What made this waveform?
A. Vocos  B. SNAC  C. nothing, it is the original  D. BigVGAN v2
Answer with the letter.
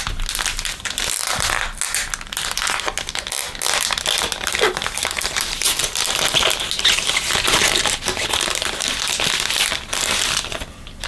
C